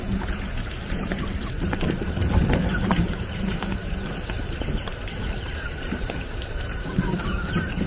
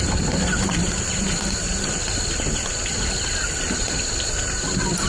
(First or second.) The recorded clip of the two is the second